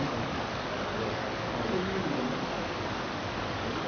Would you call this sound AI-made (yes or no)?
yes